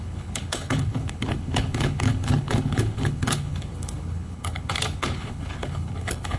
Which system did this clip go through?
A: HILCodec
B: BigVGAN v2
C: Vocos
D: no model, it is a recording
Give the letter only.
A